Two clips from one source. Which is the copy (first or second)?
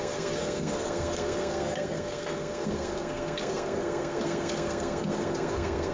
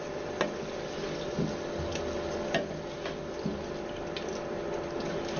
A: first